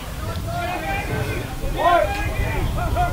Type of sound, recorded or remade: remade